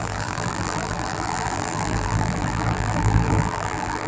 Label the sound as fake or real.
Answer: fake